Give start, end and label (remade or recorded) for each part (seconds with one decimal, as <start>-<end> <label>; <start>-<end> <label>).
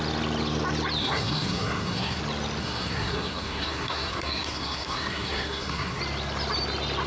0.0-1.0 recorded; 1.0-2.2 remade; 2.2-2.6 recorded; 2.6-6.0 remade; 6.0-7.1 recorded